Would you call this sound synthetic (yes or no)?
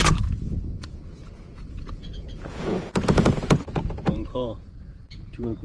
yes